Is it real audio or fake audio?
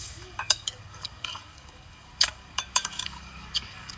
fake